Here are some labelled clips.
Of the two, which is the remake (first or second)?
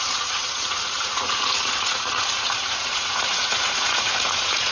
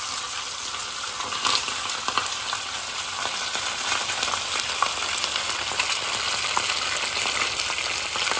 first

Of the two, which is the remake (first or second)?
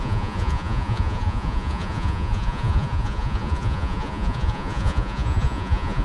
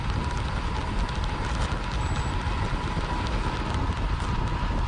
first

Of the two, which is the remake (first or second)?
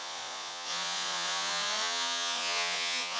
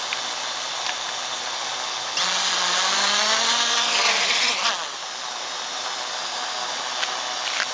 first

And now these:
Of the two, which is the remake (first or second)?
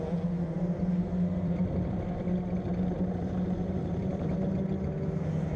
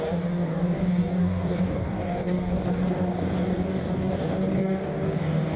second